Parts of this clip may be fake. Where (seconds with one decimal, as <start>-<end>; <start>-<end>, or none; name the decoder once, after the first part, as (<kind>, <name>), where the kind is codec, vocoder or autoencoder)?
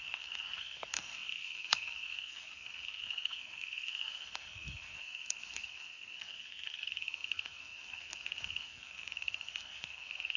0.0-10.4 (codec, SNAC)